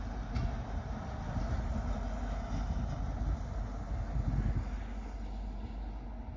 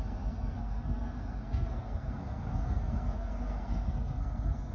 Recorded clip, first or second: first